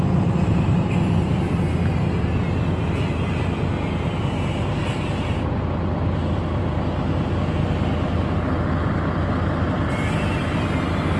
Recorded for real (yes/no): yes